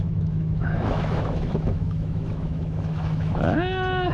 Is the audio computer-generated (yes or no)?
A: yes